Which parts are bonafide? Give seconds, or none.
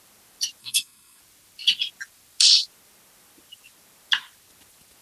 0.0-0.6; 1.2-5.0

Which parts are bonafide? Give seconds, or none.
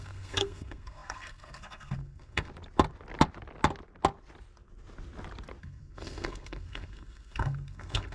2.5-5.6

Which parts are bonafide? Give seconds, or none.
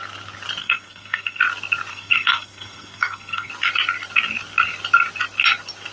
0.0-0.6; 1.4-1.9; 3.5-5.9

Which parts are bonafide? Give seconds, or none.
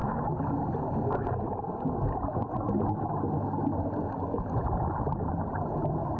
0.0-6.2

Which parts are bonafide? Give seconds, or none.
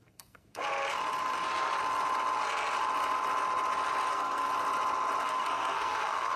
0.6-4.1; 4.5-5.2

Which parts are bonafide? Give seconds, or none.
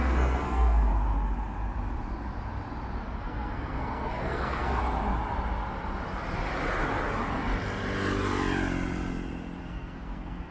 0.9-3.2; 4.8-9.6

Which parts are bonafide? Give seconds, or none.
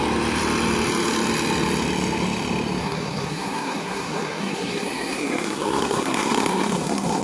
0.0-2.8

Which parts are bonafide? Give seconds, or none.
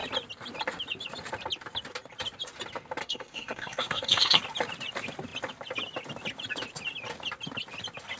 0.0-3.0; 4.4-8.2